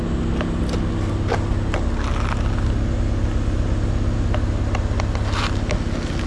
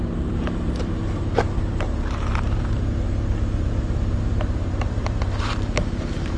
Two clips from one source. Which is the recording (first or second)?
first